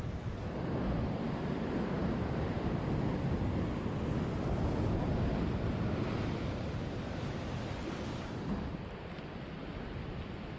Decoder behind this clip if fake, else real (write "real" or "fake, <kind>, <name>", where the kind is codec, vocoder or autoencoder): real